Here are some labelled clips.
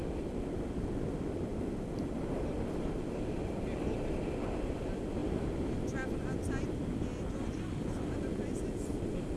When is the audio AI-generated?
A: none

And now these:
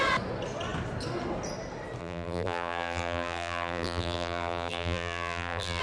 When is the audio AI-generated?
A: 2.0-5.8

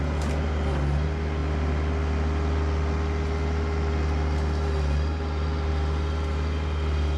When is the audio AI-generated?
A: none

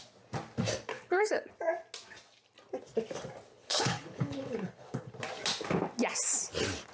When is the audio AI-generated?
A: 0.9-1.5; 3.5-5.1

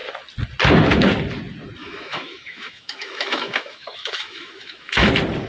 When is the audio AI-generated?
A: 1.8-5.1

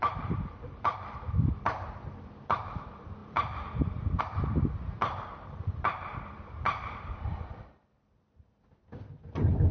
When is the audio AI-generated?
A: 0.0-7.8

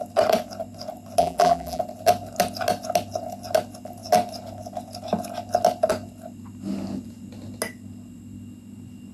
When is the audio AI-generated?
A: 1.2-1.8

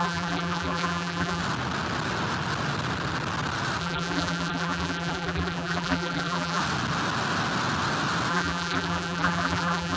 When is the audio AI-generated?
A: 0.0-1.4; 3.8-6.6; 8.3-10.0